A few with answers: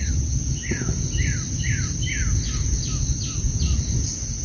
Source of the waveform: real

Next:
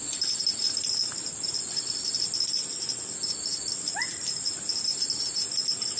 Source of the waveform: real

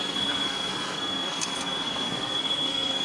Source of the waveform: fake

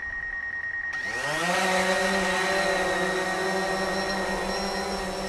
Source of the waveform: real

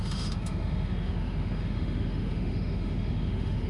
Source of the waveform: fake